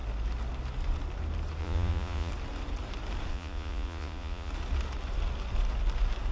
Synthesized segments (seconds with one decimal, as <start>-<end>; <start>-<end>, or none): 1.6-2.3; 3.3-4.5